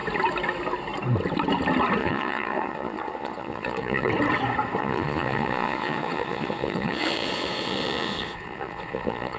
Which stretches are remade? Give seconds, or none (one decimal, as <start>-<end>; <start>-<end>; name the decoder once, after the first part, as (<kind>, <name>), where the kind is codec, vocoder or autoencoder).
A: 2.0-4.1 (vocoder, Vocos); 4.8-9.4